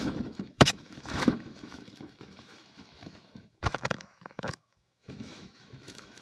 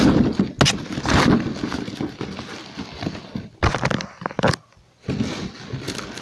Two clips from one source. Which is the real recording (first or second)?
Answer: second